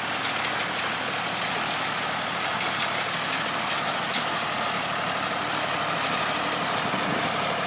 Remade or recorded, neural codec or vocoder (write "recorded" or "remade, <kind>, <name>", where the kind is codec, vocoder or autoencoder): recorded